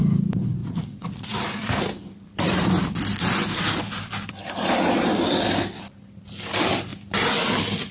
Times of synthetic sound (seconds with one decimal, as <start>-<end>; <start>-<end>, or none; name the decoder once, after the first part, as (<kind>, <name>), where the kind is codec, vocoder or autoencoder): 0.6-2.8 (vocoder, BigVGAN v2); 6.9-7.9